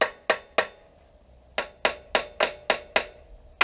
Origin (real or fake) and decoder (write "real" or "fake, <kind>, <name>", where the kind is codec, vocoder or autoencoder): real